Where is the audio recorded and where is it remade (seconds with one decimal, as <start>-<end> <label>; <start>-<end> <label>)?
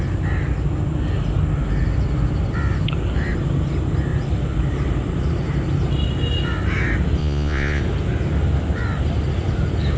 0.0-7.2 recorded; 7.2-7.8 remade; 7.8-10.0 recorded